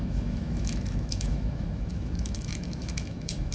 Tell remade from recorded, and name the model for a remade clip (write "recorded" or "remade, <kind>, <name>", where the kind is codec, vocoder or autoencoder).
remade, autoencoder, DAC-VAE